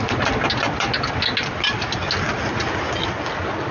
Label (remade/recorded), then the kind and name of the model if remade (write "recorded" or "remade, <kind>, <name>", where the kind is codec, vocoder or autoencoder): recorded